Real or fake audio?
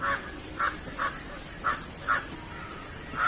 real